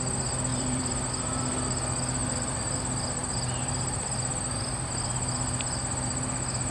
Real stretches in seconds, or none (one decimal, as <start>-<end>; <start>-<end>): 0.0-0.5; 1.1-2.2; 2.8-6.7